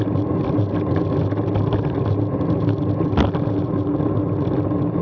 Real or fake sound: real